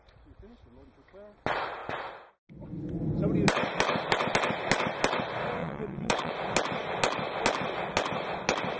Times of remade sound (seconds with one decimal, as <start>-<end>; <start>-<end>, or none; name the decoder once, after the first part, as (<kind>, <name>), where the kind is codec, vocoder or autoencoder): 5.6-6.3 (vocoder, WaveNeXt)